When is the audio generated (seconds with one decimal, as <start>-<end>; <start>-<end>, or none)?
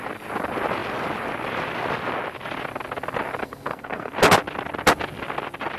3.4-4.1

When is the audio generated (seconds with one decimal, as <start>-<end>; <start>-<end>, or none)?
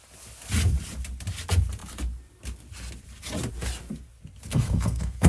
4.5-5.3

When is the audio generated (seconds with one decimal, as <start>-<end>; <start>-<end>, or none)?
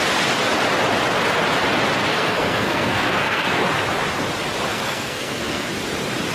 2.1-3.6; 4.7-5.7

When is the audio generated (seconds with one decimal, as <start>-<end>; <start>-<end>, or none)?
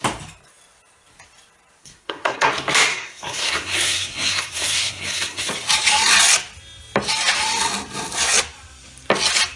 1.8-2.5; 2.9-5.5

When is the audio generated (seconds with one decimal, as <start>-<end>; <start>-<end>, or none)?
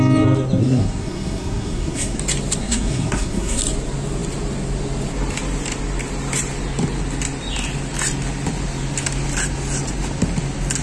0.6-2.2; 2.6-3.6